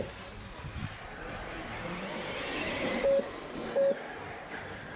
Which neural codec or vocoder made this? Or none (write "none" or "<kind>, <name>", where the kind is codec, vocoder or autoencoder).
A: none